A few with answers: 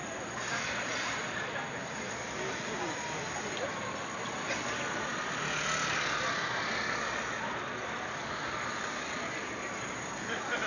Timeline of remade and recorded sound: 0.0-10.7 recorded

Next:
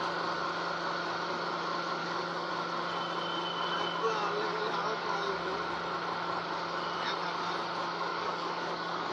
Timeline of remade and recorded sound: 0.0-2.0 recorded; 2.0-2.5 remade; 2.5-4.5 recorded; 4.5-5.4 remade; 5.4-8.1 recorded; 8.1-9.1 remade

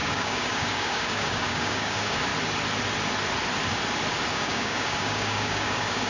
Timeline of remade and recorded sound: 0.0-2.3 remade; 2.3-4.3 recorded; 4.3-6.1 remade